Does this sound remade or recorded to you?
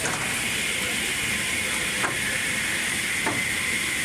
recorded